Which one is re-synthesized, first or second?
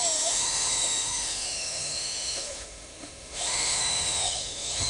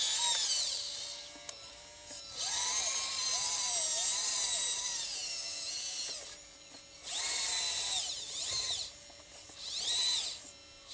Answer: first